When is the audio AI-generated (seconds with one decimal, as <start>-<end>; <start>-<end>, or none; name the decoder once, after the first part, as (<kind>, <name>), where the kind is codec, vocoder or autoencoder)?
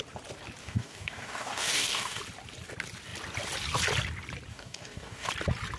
0.6-2.2 (codec, DAC); 4.5-5.3